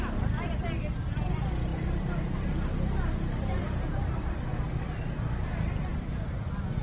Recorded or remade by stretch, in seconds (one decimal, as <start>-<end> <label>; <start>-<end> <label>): 0.0-6.8 recorded